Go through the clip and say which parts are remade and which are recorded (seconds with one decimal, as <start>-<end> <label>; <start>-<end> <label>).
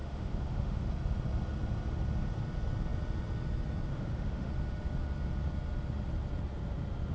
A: 0.0-0.9 remade; 0.9-3.9 recorded; 3.9-4.5 remade; 4.5-7.1 recorded